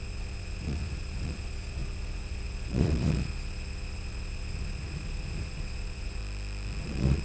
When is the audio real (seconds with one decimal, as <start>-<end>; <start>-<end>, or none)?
6.2-6.8